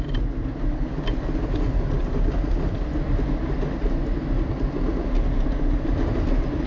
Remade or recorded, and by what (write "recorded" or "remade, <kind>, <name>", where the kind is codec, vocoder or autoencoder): recorded